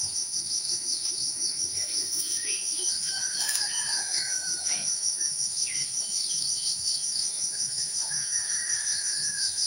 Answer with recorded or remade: remade